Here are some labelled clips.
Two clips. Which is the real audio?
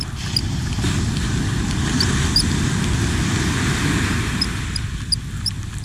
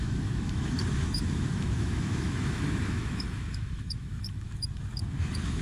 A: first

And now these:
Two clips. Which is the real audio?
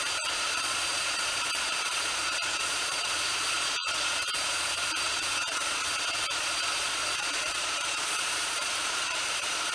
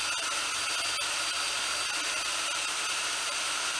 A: second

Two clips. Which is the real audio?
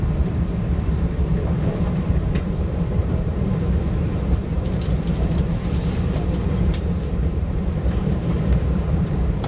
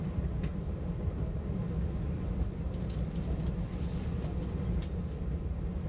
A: second